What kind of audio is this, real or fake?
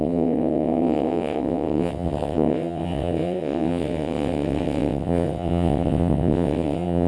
fake